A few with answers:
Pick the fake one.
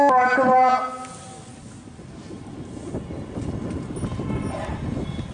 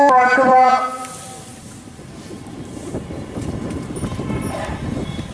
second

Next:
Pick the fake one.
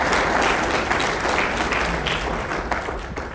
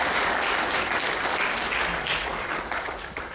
second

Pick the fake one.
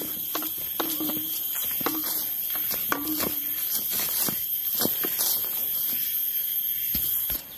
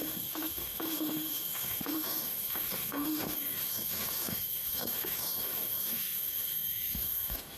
second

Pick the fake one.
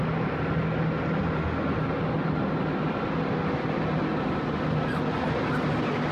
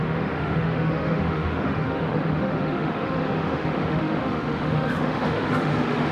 second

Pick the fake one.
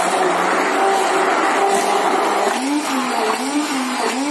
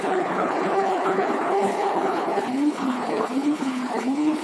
second